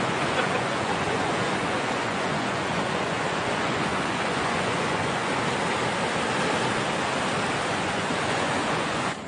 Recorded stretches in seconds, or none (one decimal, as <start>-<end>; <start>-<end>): 5.3-7.7